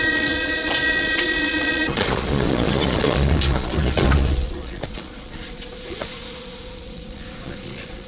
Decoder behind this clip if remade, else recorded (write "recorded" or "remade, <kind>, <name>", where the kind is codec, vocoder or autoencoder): remade, vocoder, Vocos